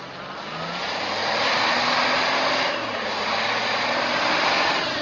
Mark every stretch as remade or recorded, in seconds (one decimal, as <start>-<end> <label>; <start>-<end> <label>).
0.0-5.0 recorded